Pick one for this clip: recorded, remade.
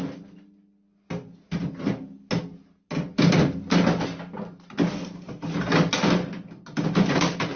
recorded